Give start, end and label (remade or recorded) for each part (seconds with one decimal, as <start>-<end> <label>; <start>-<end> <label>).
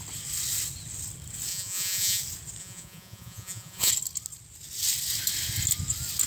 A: 0.0-1.5 recorded; 1.5-2.2 remade; 2.2-2.6 recorded; 2.6-3.9 remade; 3.9-6.3 recorded